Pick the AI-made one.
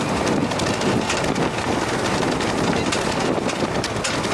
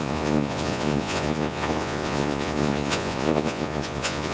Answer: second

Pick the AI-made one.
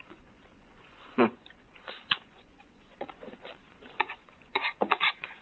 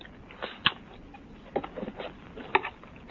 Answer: first